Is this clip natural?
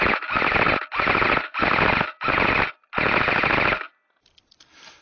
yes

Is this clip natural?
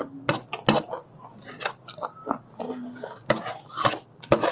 yes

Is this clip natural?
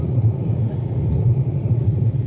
no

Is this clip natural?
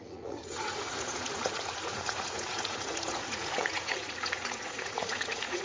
no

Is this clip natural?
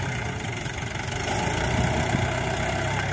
yes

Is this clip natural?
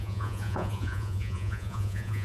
no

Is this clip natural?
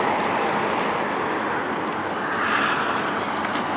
yes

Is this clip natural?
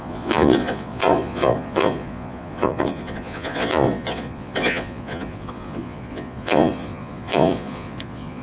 no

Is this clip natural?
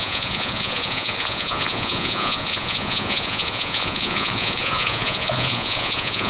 no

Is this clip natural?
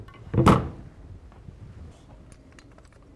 yes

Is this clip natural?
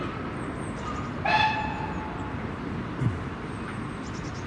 yes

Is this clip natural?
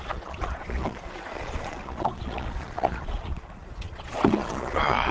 no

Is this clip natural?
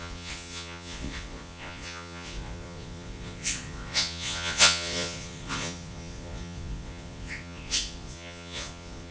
no